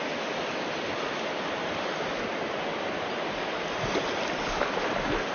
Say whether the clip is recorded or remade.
recorded